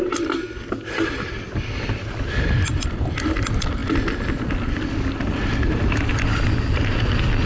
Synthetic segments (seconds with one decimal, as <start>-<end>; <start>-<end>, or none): none